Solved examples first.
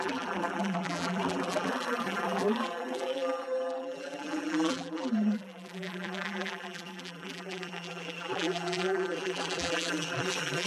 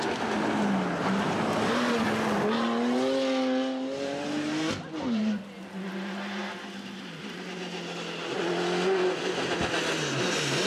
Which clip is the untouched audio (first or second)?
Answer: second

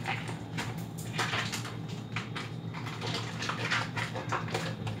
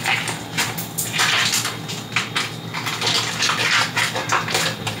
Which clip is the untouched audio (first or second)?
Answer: second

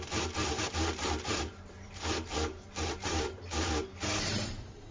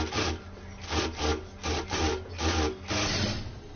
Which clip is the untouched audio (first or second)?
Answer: second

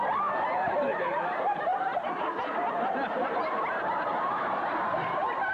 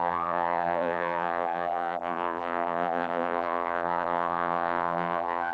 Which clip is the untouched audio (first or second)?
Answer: first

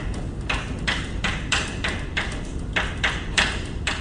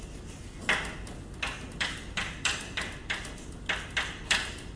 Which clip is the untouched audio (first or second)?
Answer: second